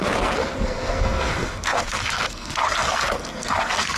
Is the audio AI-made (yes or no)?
yes